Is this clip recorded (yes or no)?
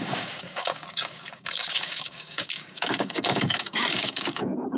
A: no